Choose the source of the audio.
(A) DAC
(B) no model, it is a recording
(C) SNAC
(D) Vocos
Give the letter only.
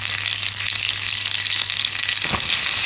B